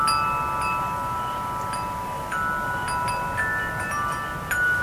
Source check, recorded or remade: recorded